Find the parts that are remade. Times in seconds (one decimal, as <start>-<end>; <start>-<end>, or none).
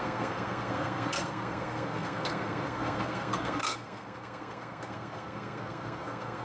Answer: 0.0-6.4